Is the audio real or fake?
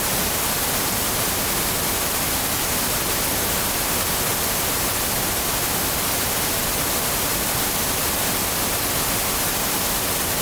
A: real